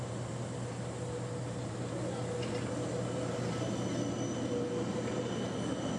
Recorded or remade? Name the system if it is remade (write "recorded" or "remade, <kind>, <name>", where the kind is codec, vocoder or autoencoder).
recorded